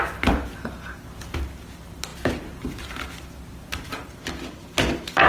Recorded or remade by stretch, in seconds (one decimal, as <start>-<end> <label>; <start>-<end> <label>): 0.0-5.3 recorded